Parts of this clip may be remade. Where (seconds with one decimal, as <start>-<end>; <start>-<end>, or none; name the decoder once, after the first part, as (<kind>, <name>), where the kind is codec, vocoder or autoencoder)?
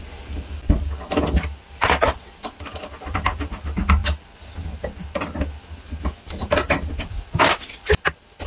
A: none